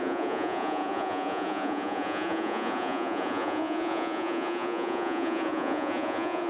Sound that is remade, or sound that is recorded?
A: remade